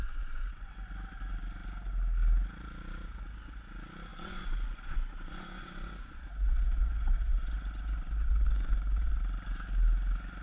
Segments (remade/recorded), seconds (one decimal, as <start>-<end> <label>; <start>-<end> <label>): 0.0-0.7 remade; 0.7-4.1 recorded; 4.1-9.2 remade; 9.2-10.4 recorded